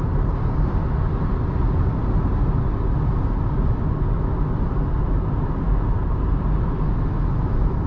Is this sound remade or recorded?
recorded